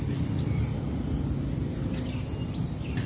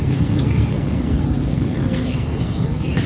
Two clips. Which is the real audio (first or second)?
first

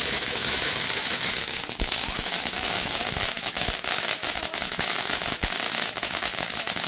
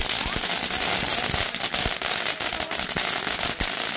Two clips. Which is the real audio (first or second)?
second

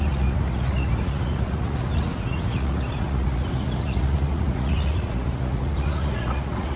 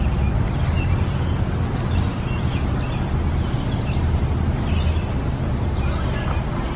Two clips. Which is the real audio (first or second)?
second